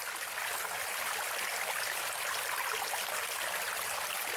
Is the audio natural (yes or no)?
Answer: yes